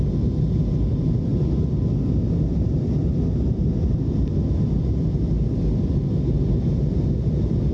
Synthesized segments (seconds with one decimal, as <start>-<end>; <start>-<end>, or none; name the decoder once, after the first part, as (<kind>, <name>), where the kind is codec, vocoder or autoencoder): none